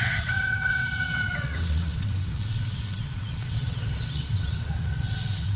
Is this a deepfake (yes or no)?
yes